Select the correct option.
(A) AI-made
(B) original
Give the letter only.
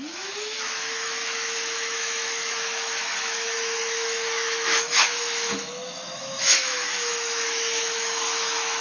A